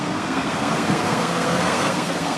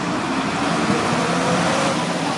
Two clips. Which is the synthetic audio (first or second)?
first